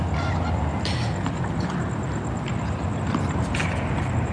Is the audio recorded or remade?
recorded